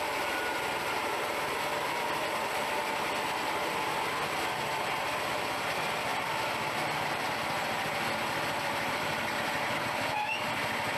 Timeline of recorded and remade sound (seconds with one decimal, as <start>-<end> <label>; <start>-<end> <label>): 0.0-11.0 recorded